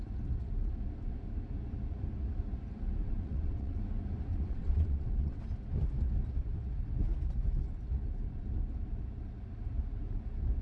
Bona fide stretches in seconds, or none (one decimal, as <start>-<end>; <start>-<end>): 0.0-3.0; 3.8-4.3; 5.4-10.6